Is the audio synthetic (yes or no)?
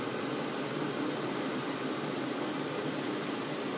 no